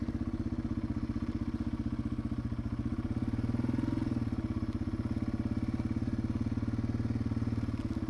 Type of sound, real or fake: real